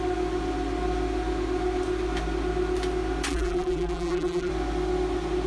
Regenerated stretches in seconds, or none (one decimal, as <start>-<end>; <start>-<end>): 3.3-4.5